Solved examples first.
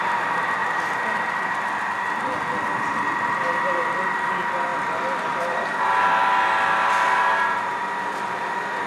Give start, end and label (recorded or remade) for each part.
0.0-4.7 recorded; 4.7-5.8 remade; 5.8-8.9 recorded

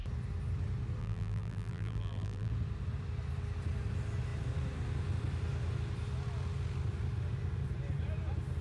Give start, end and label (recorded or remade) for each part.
0.0-1.0 recorded; 1.0-2.5 remade; 2.5-8.6 recorded

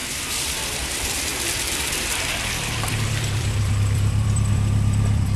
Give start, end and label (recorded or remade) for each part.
0.0-5.4 remade

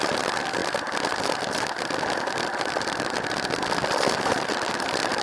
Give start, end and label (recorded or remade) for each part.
0.0-5.2 remade

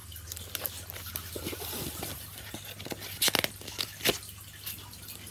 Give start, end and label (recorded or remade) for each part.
0.0-5.3 recorded

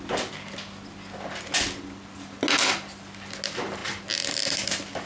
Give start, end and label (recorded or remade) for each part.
0.0-5.1 recorded

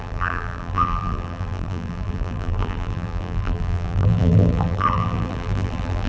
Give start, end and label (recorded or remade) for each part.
0.0-6.1 remade